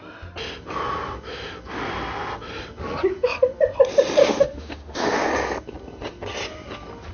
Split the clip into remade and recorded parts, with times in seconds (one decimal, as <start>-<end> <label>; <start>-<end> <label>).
0.0-4.2 recorded; 4.2-5.3 remade; 5.3-7.1 recorded